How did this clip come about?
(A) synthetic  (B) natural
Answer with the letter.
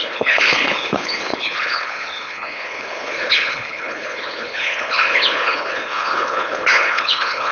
A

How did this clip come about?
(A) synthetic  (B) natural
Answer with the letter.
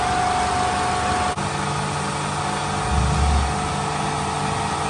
B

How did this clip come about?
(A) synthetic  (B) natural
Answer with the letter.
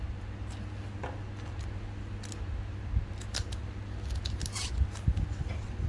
B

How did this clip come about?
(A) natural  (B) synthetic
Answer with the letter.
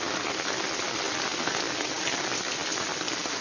A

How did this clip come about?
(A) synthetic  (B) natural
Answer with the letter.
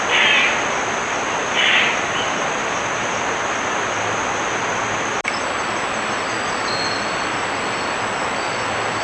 B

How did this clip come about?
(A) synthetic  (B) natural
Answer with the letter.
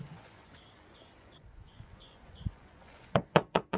A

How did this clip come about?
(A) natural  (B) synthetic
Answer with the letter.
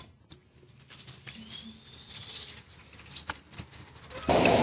A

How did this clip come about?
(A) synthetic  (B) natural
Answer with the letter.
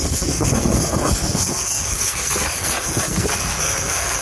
A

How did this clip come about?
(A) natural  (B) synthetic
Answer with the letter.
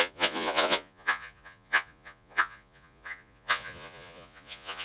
B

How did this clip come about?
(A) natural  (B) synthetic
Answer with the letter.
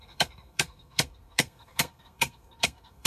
B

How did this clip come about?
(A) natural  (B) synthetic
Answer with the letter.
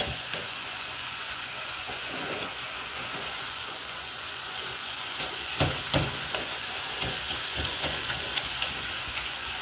B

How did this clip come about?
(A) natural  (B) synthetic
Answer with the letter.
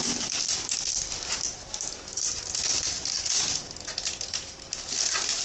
A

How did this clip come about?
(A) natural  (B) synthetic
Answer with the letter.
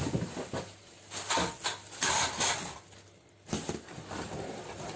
A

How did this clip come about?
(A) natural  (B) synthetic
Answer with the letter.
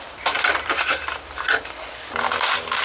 A